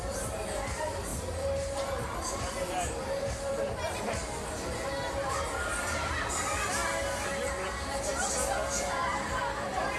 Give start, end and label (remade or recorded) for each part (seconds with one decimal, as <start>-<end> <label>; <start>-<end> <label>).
0.0-1.1 remade; 1.1-2.3 recorded; 2.3-4.2 remade; 4.2-6.1 recorded; 6.1-6.8 remade; 6.8-8.8 recorded; 8.8-10.0 remade